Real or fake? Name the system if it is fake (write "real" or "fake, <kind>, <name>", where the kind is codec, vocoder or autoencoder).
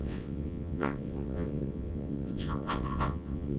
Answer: fake, vocoder, WaveNeXt